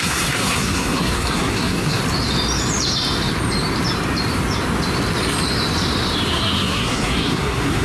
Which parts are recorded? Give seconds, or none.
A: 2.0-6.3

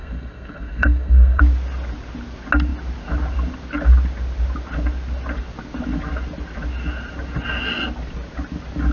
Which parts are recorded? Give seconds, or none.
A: 1.4-8.9